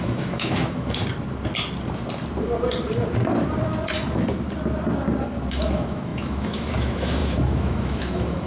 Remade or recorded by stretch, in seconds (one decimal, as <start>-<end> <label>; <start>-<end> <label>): 0.0-1.0 remade; 1.0-5.5 recorded; 5.5-8.5 remade